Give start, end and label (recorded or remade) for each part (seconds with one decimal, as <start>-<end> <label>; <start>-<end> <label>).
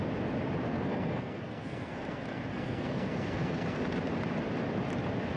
0.0-0.6 recorded; 0.6-3.8 remade; 3.8-5.4 recorded